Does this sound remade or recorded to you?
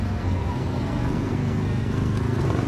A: remade